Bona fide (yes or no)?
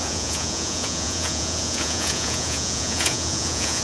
no